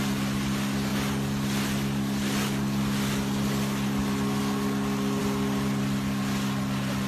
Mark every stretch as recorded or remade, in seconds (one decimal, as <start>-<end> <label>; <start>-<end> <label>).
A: 0.0-7.1 recorded